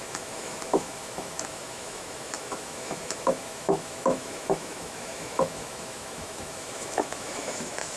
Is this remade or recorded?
remade